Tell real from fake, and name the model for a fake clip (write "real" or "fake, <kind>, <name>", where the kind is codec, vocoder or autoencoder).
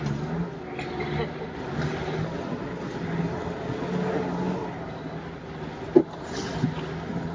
real